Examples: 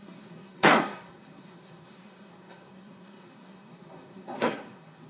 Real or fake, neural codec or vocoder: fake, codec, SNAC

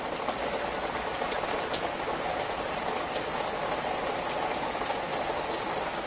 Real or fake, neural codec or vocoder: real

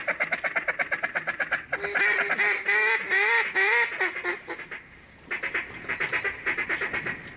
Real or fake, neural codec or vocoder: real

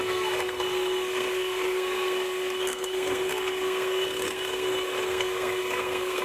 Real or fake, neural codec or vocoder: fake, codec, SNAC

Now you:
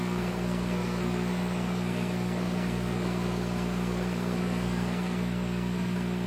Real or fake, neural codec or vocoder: fake, codec, SNAC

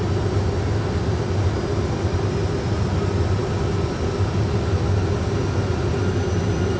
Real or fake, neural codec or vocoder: real